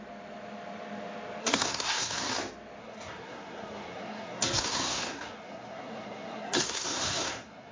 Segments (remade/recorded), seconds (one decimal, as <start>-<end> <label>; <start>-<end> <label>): 0.0-1.4 recorded; 1.4-2.3 remade; 2.3-2.8 recorded; 2.8-7.7 remade